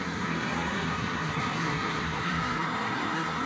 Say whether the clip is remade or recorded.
remade